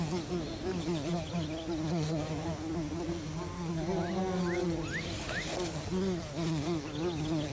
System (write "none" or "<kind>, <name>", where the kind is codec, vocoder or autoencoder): none